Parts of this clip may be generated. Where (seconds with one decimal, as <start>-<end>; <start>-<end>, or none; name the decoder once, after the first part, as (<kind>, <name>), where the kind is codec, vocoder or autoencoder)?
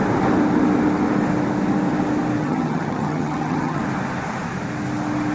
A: 2.4-3.8 (vocoder, HiFi-GAN)